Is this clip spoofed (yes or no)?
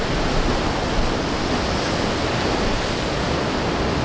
no